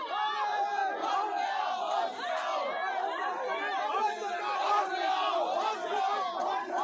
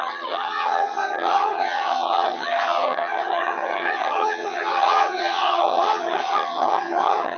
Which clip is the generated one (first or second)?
second